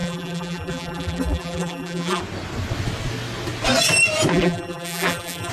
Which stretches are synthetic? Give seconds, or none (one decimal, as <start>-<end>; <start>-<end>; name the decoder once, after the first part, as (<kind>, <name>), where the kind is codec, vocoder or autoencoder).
0.0-2.2 (vocoder, BigVGAN v2); 4.3-5.5